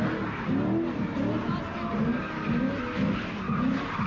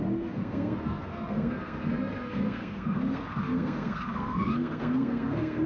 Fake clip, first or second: second